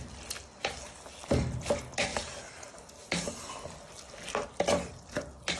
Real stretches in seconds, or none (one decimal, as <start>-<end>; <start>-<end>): 0.0-5.6